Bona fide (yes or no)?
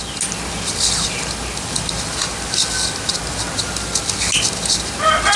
yes